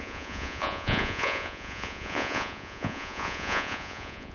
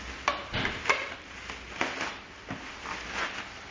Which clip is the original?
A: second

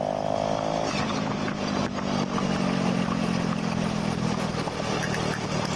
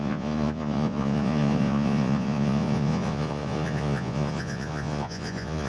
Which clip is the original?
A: first